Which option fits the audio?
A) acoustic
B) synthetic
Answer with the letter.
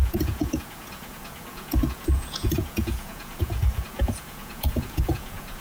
B